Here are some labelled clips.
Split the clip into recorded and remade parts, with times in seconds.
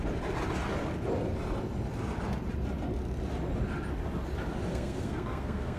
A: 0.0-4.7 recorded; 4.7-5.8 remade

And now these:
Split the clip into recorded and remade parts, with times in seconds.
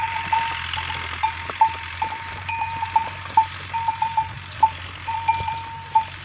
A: 0.0-6.2 recorded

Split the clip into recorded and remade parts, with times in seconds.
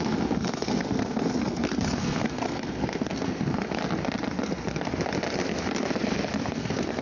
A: 0.0-3.8 remade; 3.8-4.4 recorded; 4.4-4.9 remade; 4.9-6.5 recorded; 6.5-7.0 remade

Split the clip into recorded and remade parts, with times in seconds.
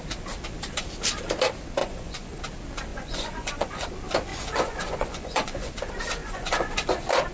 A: 0.0-1.8 recorded; 1.8-2.4 remade; 2.4-2.9 recorded; 2.9-3.9 remade; 3.9-4.3 recorded; 4.3-5.7 remade; 5.7-6.2 recorded; 6.2-6.7 remade; 6.7-7.3 recorded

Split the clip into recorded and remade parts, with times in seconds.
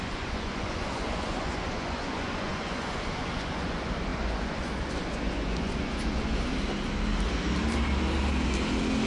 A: 0.0-6.5 remade; 6.5-9.1 recorded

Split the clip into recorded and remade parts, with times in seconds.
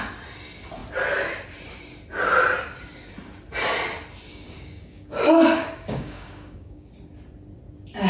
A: 0.0-4.3 recorded; 4.3-6.9 remade; 6.9-8.1 recorded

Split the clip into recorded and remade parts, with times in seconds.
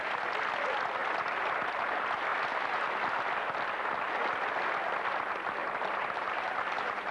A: 0.0-5.6 recorded; 5.6-7.1 remade